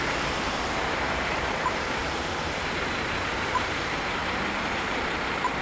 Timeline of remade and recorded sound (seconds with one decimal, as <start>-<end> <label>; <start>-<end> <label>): 0.0-4.2 remade; 4.2-4.8 recorded; 4.8-5.6 remade

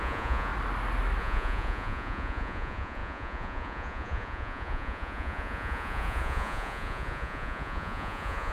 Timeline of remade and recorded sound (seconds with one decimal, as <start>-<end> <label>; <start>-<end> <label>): 0.0-0.5 remade; 0.5-1.2 recorded; 1.2-8.5 remade

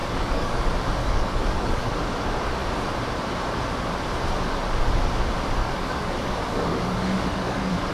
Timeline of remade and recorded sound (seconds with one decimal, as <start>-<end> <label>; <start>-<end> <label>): 0.0-0.6 remade; 0.6-1.0 recorded; 1.0-1.9 remade; 1.9-5.6 recorded; 5.6-7.9 remade

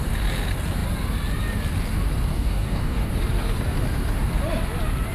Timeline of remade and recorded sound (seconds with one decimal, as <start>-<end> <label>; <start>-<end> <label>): 0.0-2.3 recorded; 2.3-3.1 remade; 3.1-5.1 recorded

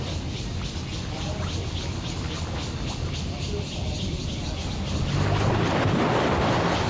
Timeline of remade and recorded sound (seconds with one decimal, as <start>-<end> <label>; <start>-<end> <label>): 0.0-6.9 recorded